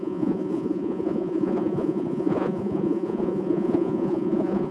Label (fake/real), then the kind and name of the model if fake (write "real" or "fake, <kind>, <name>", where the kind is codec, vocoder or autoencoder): fake, vocoder, Vocos